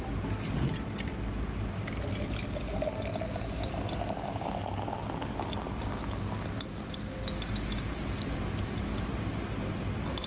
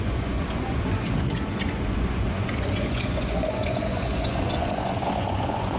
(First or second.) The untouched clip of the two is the first